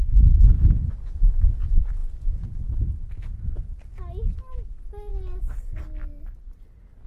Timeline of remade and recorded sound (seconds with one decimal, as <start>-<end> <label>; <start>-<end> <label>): 0.0-7.1 recorded